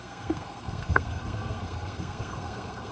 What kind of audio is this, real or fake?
fake